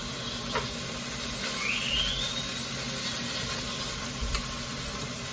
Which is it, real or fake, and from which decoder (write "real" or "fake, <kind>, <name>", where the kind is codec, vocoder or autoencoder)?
real